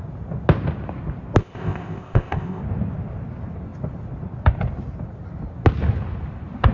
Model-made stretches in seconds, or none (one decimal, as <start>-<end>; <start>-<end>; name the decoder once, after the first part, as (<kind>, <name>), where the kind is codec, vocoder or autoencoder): 1.4-2.6 (codec, ZipCodec)